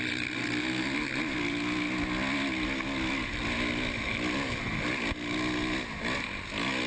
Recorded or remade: recorded